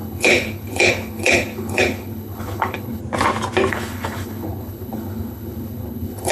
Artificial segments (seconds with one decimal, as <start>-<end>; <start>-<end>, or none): 0.0-3.0; 3.7-6.3